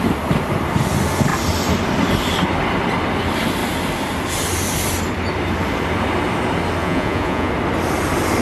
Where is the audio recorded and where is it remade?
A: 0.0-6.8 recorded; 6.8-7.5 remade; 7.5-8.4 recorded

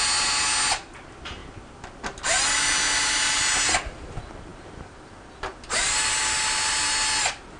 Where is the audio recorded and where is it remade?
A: 0.0-7.6 recorded

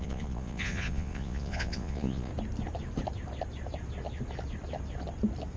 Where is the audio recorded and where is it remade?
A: 0.0-2.3 remade; 2.3-5.6 recorded

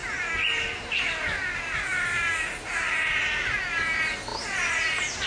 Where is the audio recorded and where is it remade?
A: 0.0-5.3 recorded

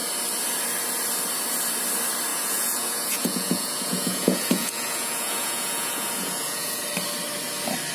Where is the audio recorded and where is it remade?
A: 0.0-2.3 recorded; 2.3-6.8 remade; 6.8-7.9 recorded

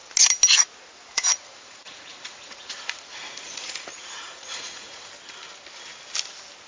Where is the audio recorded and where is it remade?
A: 0.0-1.1 recorded; 1.1-5.1 remade; 5.1-6.7 recorded

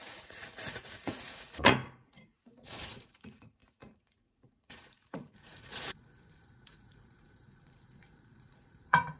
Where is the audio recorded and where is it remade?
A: 0.0-9.2 remade